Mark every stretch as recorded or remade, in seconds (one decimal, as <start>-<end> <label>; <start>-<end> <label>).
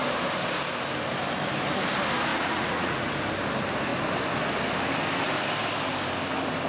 0.0-2.3 recorded; 2.3-3.1 remade; 3.1-6.7 recorded